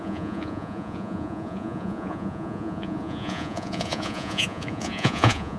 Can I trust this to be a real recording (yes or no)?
no